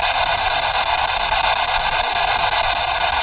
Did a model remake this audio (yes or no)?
no